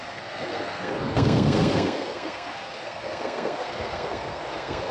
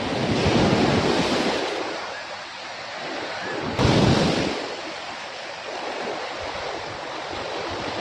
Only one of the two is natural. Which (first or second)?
second